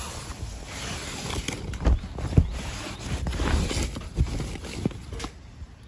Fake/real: real